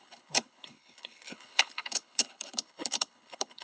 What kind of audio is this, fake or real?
fake